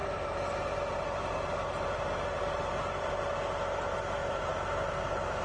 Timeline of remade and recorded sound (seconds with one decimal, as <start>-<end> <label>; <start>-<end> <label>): 0.0-3.2 remade; 3.2-4.2 recorded; 4.2-5.4 remade